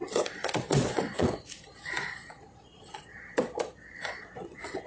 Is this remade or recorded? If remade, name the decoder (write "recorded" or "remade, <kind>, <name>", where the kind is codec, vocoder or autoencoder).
remade, vocoder, Vocos